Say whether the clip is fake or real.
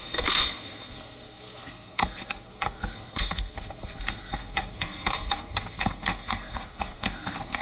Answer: fake